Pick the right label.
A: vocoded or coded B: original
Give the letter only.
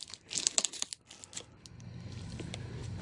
B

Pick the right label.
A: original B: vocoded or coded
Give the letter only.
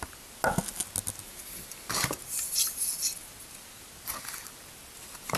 A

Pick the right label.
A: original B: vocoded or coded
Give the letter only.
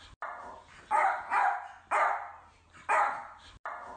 A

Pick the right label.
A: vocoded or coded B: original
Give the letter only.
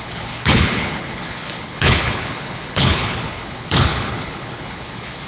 A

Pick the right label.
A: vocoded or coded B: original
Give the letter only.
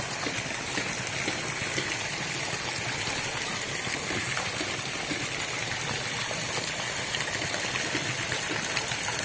B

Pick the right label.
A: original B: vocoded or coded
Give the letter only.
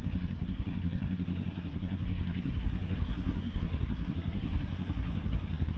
B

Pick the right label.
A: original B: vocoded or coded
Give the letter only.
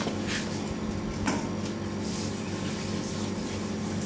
A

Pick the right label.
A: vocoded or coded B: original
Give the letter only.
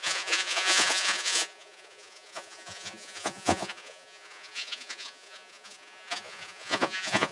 A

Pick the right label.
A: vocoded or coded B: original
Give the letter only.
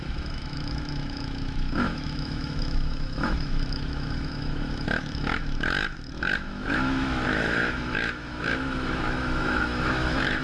A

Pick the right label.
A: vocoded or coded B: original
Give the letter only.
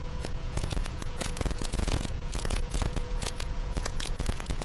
A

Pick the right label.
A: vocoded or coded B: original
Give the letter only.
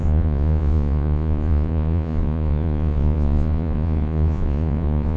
A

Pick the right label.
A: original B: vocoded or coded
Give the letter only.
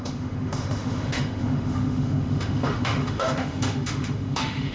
B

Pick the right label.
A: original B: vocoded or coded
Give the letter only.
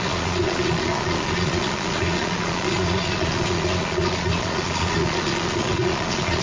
B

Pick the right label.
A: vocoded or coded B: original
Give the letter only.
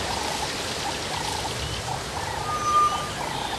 B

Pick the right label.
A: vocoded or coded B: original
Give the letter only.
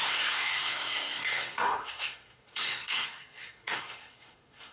A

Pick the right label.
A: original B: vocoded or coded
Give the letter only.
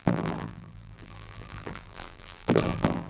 B